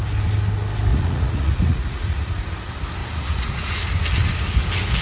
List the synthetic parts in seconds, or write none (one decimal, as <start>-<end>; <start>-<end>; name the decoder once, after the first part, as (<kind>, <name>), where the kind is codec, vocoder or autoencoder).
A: 0.9-2.4 (vocoder, Vocos); 3.0-3.8